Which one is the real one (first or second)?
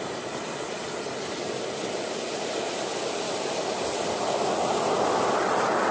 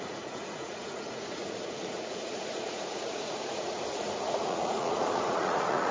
first